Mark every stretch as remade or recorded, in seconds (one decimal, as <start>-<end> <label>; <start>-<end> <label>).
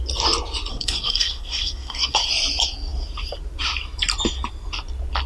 0.0-0.7 recorded; 0.7-2.3 remade; 2.3-5.3 recorded